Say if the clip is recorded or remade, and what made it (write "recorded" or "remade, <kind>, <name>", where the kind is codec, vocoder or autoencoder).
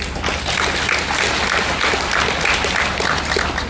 recorded